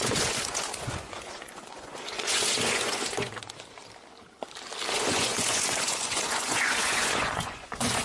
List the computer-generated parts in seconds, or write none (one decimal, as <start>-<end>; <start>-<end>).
0.0-3.8; 4.9-8.0